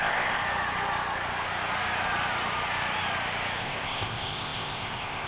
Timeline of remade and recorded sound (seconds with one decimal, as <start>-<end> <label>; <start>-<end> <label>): 0.0-0.4 remade; 0.4-3.6 recorded; 3.6-5.3 remade